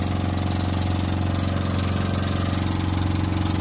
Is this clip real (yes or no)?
yes